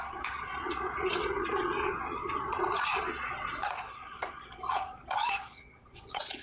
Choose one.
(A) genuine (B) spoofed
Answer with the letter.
B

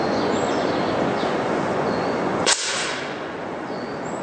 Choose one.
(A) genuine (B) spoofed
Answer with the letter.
B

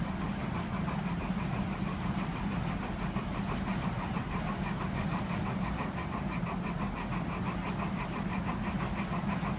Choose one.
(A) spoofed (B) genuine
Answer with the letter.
B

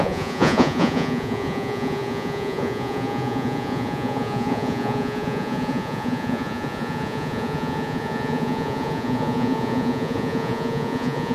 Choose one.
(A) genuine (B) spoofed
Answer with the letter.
B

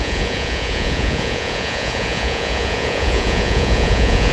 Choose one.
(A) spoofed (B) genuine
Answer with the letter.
A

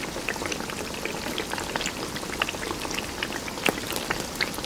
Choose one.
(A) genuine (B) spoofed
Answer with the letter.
A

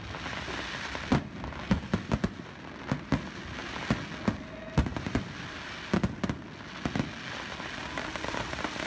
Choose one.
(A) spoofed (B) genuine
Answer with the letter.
B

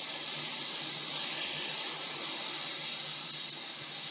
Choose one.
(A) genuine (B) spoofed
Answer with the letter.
A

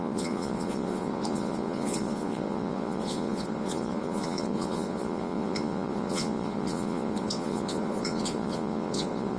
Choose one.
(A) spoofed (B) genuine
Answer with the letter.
A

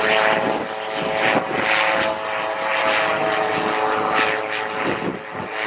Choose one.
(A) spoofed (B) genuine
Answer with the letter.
B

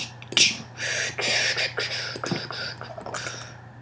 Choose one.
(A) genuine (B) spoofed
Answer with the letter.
A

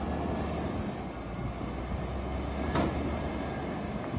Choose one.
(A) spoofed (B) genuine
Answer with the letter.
B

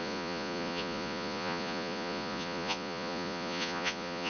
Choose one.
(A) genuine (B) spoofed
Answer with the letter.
B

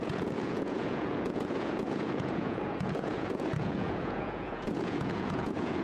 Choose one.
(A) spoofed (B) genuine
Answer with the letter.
A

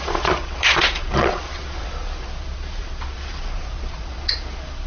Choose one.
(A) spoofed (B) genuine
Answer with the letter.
A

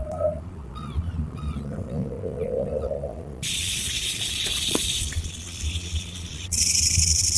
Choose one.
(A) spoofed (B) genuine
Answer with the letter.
A